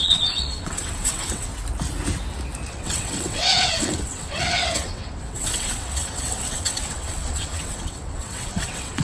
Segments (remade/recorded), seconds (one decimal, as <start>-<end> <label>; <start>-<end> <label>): 0.0-1.5 remade; 1.5-2.7 recorded; 2.7-9.0 remade